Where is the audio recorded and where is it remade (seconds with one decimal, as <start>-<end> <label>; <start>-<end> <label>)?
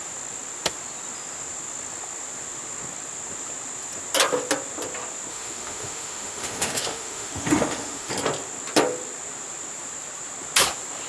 0.0-5.3 recorded; 5.3-8.1 remade; 8.1-11.1 recorded